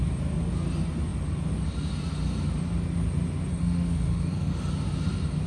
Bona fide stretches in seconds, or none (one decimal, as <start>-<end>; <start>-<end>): 0.0-3.5; 4.7-5.5